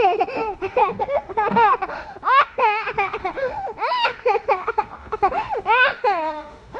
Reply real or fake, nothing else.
fake